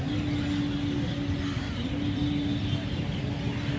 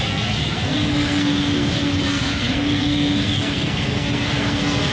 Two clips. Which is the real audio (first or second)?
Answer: first